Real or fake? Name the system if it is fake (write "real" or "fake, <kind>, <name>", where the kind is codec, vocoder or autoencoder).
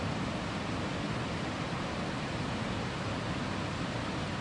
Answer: real